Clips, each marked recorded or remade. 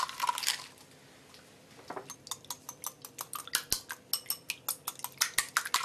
recorded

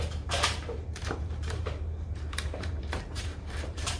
remade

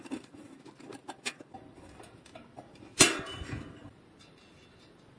recorded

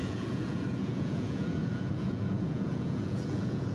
remade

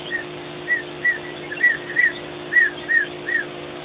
recorded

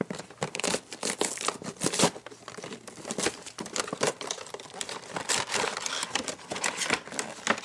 recorded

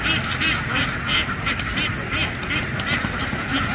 recorded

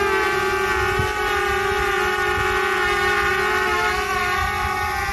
recorded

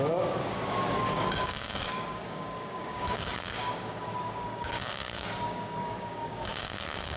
remade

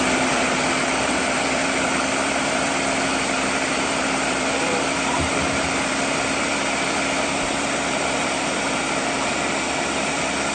remade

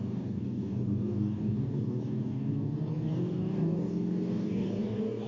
remade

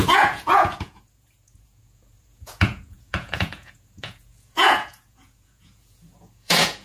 remade